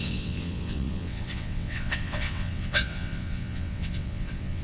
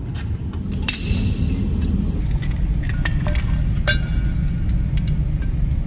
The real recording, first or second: second